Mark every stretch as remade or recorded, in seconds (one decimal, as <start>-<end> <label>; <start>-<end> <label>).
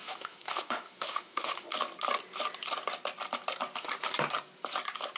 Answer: 0.0-1.7 remade; 1.7-5.2 recorded